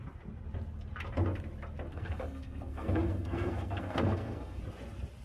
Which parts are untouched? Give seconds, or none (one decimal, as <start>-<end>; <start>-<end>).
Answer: 0.0-1.9; 4.6-5.2